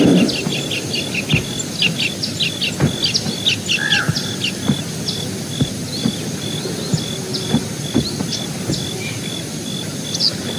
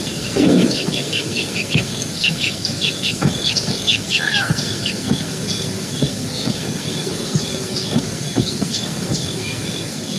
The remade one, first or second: second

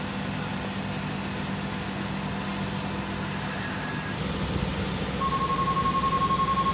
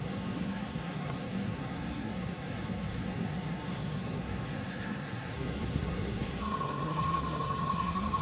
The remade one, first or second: second